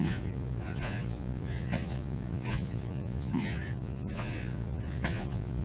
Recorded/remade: remade